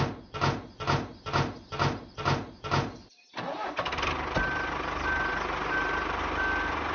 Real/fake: real